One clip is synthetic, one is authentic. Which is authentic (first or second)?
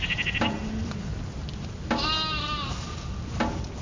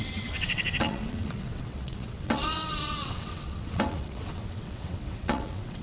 first